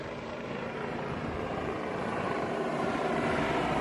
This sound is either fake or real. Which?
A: fake